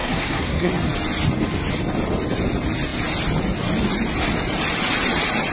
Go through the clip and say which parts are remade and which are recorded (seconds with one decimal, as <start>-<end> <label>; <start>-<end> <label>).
0.0-0.7 remade; 0.7-5.5 recorded